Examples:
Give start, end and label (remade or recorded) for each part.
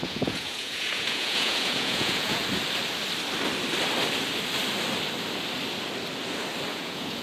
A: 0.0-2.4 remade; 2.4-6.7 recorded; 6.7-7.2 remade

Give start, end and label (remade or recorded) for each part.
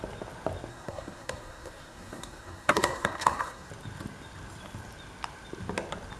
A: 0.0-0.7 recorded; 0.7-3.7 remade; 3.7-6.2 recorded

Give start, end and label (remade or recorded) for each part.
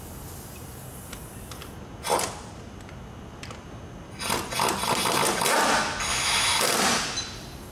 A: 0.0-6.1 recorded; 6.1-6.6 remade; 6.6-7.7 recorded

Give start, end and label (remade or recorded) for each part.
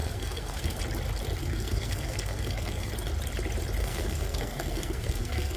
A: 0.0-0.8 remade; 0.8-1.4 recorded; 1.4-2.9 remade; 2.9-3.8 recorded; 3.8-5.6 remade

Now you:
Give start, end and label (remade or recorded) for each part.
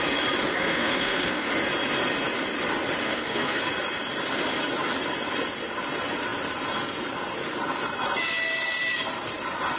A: 0.0-0.5 recorded; 0.5-1.5 remade; 1.5-3.0 recorded; 3.0-3.7 remade; 3.7-9.8 recorded